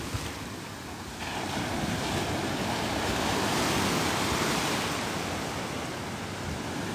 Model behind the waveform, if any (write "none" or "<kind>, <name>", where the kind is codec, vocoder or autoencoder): none